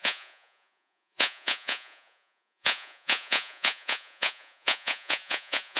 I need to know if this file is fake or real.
fake